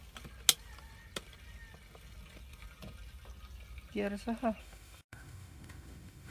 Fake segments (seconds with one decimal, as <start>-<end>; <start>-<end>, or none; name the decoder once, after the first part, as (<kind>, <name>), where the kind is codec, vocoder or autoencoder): 4.6-6.3 (autoencoder, DAC-VAE)